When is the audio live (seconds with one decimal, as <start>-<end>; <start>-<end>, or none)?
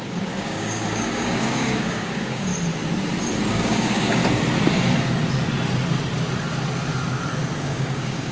2.5-3.5; 4.2-7.6